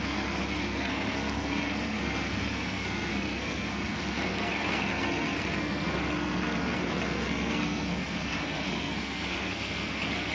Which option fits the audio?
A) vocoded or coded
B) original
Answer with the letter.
A